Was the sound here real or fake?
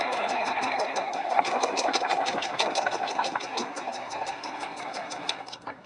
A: fake